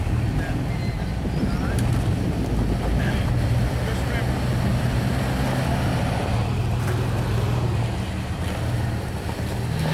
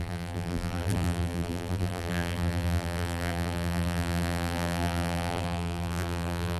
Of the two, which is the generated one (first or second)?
second